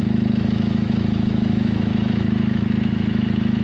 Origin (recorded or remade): remade